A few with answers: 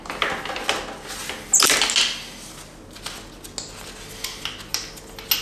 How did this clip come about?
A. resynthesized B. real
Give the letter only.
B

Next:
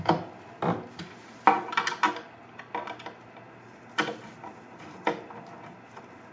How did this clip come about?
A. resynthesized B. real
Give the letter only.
B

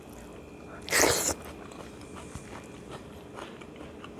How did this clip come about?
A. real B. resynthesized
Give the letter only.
A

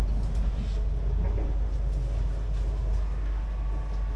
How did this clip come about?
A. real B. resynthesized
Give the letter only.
A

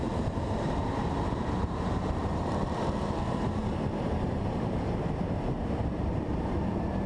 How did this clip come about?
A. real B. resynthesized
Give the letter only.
B